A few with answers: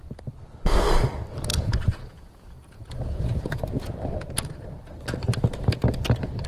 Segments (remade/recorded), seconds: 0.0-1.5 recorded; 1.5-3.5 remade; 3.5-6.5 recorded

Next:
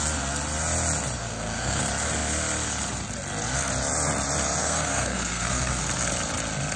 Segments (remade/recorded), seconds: 0.0-1.2 recorded; 1.2-1.8 remade; 1.8-4.6 recorded; 4.6-5.8 remade; 5.8-6.8 recorded

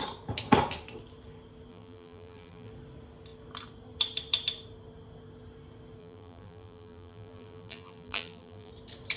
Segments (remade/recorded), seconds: 0.0-1.7 recorded; 1.7-2.7 remade; 2.7-6.0 recorded; 6.0-8.7 remade; 8.7-9.2 recorded

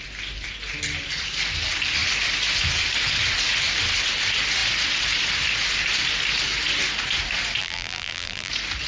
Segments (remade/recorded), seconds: 0.0-7.6 recorded; 7.6-8.5 remade; 8.5-8.9 recorded

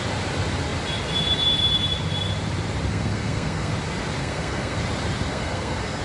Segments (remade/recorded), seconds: 0.0-2.9 recorded; 2.9-3.7 remade; 3.7-4.2 recorded; 4.2-4.8 remade; 4.8-5.3 recorded; 5.3-6.0 remade

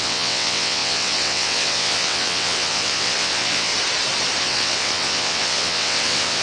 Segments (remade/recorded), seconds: 0.0-3.7 remade; 3.7-4.4 recorded; 4.4-6.4 remade